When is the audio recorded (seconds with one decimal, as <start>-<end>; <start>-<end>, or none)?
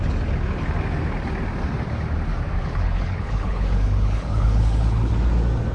0.0-2.6; 5.1-5.7